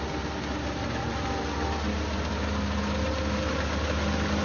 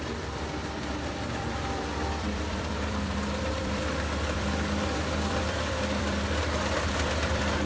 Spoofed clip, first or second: second